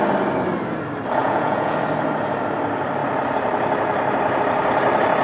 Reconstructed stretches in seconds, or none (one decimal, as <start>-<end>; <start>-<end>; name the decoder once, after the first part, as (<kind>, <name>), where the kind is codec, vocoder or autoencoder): 1.2-1.8 (vocoder, Vocos)